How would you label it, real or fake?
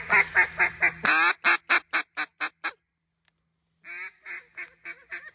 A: real